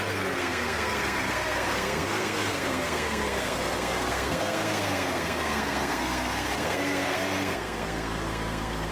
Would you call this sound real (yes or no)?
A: no